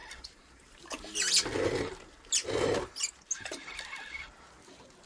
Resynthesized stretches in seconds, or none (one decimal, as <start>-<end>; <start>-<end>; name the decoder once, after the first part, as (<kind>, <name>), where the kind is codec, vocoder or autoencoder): 0.0-1.1 (vocoder, BigVGAN v2)